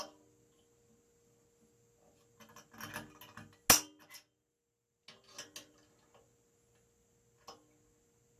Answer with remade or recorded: recorded